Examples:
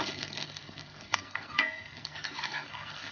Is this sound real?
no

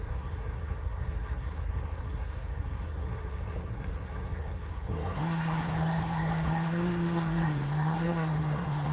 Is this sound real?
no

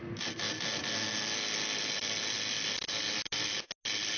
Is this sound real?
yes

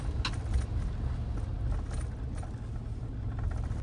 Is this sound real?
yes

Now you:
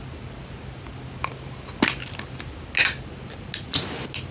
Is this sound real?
yes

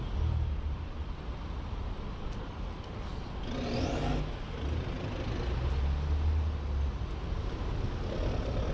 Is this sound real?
yes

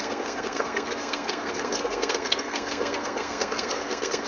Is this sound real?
no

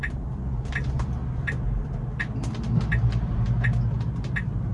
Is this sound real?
yes